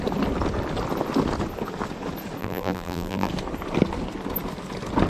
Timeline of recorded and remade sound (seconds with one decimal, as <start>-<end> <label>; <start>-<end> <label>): 0.0-2.4 recorded; 2.4-3.3 remade; 3.3-5.1 recorded